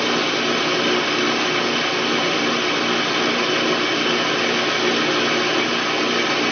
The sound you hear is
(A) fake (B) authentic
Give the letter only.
B